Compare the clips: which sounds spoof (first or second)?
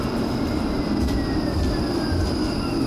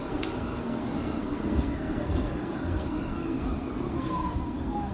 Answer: second